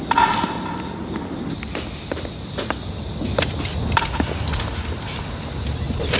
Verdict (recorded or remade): recorded